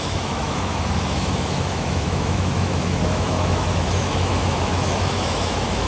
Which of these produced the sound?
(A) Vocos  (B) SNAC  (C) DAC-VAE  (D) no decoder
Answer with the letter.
C